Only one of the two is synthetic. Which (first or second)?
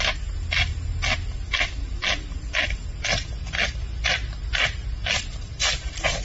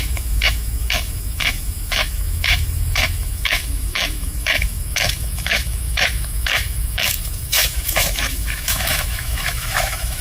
second